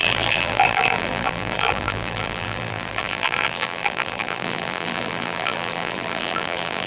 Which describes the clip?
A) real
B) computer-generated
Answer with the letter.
B